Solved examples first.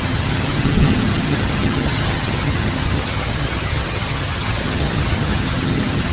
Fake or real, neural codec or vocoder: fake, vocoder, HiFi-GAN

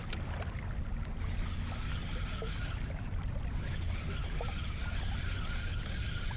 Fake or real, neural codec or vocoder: real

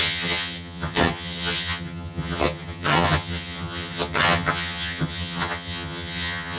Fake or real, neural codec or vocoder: fake, vocoder, HiFi-GAN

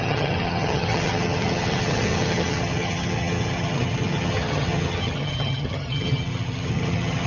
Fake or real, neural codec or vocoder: fake, vocoder, HiFi-GAN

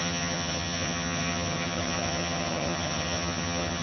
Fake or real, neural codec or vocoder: fake, vocoder, HiFi-GAN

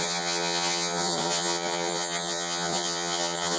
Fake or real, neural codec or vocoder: fake, vocoder, HiFi-GAN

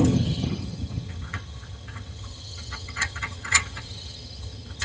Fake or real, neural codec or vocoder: fake, vocoder, HiFi-GAN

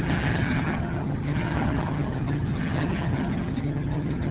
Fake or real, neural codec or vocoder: fake, vocoder, HiFi-GAN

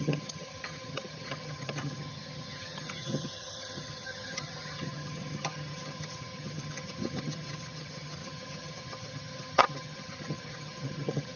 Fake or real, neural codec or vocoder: fake, vocoder, HiFi-GAN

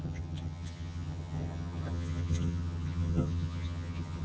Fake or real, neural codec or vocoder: fake, vocoder, HiFi-GAN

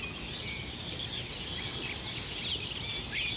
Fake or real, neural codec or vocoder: real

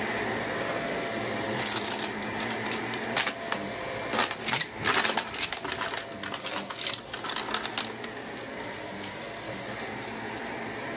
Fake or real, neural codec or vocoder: real